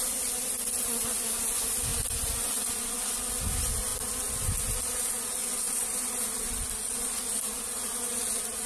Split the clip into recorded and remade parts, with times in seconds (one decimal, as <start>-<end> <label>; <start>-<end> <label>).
0.0-8.7 recorded